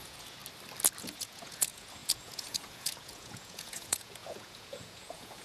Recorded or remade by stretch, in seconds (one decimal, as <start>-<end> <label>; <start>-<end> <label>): 0.0-0.4 remade; 0.4-1.0 recorded; 1.0-5.4 remade